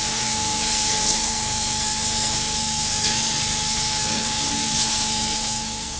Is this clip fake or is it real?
fake